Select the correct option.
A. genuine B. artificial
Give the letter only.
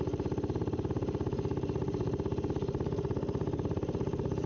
A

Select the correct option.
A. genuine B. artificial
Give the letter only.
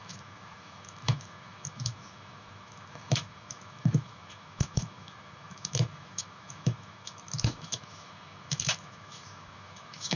B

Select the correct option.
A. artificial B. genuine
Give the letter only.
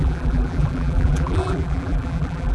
A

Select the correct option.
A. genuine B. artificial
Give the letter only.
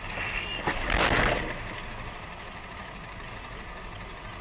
A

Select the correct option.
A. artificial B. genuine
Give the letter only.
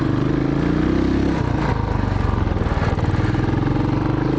B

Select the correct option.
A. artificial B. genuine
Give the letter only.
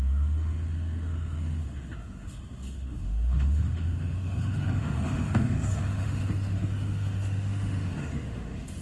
A